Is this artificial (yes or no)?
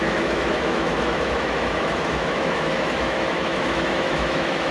yes